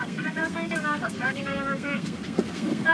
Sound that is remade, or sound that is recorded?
remade